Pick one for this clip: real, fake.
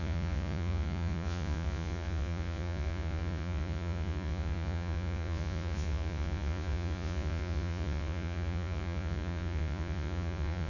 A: fake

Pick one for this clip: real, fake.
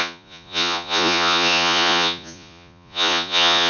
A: fake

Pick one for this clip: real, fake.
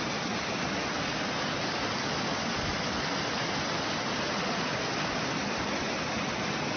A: real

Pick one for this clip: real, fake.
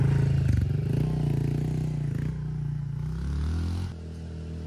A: real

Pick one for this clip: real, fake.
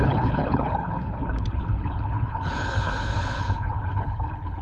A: fake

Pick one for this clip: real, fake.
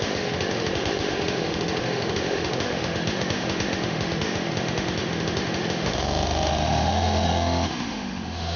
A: fake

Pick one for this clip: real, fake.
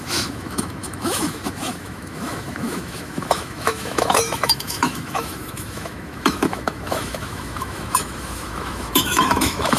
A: fake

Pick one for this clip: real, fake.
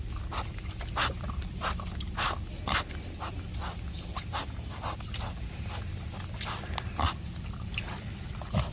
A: real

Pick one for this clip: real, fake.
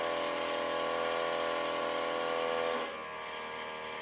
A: real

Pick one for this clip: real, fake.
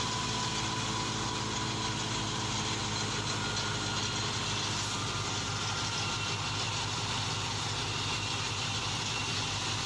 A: real